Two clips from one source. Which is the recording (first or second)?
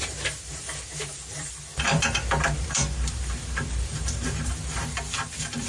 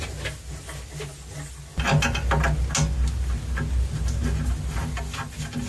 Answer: second